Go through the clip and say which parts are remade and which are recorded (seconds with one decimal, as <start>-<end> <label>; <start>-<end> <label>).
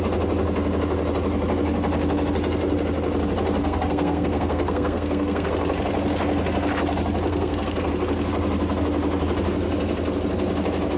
0.0-3.6 recorded; 3.6-5.5 remade; 5.5-7.3 recorded; 7.3-7.9 remade; 7.9-11.0 recorded